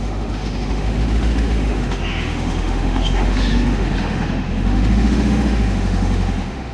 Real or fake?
fake